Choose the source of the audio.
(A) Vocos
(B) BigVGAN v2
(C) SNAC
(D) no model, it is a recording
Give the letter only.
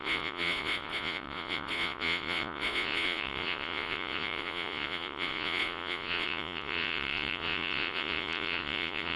A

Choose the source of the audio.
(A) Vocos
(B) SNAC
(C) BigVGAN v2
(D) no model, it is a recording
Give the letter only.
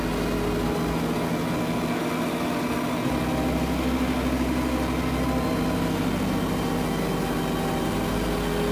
D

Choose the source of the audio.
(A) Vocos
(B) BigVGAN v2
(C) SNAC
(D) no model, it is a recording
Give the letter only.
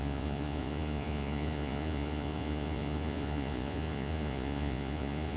A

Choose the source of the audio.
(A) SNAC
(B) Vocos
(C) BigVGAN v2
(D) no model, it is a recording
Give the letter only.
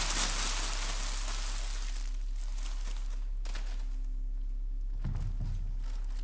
D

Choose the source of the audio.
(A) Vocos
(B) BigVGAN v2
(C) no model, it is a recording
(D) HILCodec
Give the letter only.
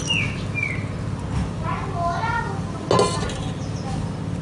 C